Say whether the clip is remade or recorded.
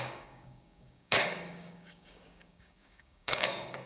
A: remade